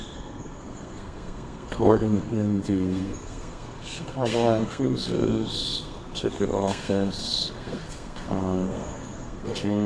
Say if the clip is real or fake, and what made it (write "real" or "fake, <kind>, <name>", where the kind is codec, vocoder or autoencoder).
fake, codec, SNAC